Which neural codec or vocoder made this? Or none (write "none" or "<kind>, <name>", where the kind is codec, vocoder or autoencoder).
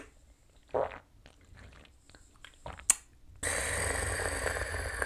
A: none